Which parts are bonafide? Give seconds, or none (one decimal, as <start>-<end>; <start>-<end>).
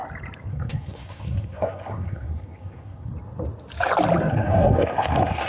0.0-0.5; 3.1-4.3